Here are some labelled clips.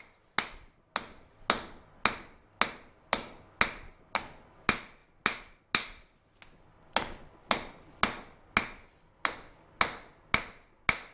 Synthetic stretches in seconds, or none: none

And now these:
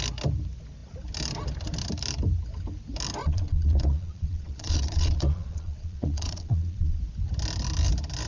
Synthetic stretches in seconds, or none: 3.2-7.0 (vocoder, Vocos)

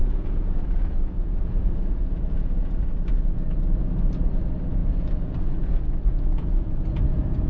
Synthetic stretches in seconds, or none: 0.0-2.7 (vocoder, Vocos); 4.8-7.5